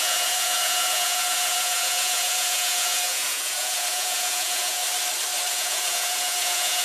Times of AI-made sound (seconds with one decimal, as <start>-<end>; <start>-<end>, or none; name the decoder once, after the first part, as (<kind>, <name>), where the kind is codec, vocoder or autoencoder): 0.0-4.8 (vocoder, Vocos); 5.5-6.8

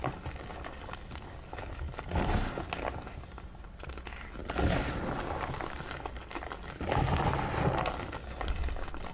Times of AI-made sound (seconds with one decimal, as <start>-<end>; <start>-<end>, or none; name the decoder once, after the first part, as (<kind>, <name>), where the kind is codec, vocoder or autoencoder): none

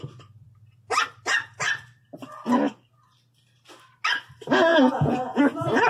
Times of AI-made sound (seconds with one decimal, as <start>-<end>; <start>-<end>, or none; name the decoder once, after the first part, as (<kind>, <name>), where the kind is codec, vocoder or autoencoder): 4.7-5.4 (vocoder, Vocos)

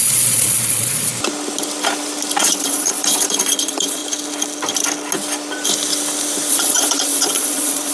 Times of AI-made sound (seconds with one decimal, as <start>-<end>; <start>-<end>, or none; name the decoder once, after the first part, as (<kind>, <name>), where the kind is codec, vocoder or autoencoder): 0.0-1.1 (vocoder, Vocos); 2.4-4.0; 6.5-7.9

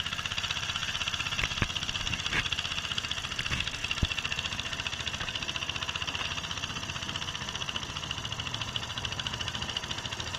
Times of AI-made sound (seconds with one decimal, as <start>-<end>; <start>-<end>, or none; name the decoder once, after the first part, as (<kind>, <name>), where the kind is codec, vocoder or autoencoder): none

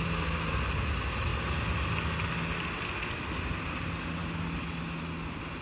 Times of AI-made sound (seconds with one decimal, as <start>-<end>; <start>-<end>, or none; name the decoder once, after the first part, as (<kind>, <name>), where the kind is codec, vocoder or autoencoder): none